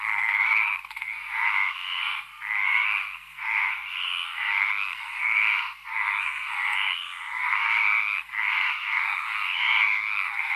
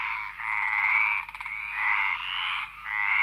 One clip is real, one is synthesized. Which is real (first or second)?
second